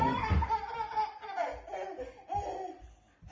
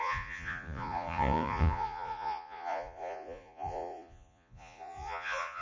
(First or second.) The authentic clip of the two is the first